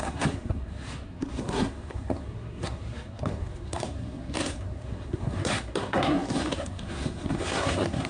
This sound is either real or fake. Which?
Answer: fake